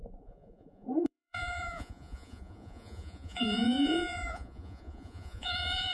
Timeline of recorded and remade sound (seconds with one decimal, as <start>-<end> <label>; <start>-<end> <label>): 0.0-5.9 remade